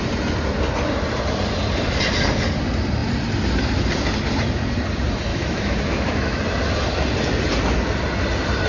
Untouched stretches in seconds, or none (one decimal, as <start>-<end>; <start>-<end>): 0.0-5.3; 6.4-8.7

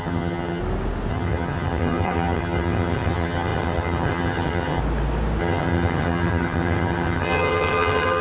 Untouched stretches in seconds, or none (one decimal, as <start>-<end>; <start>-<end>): 0.6-1.1; 4.8-5.4

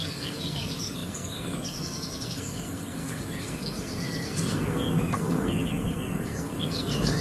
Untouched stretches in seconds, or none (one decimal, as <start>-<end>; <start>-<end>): none